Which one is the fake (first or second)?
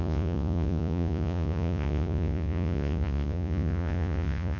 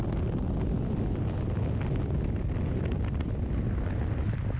first